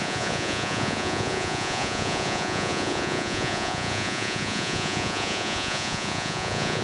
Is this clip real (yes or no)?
no